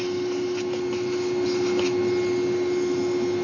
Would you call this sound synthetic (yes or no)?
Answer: no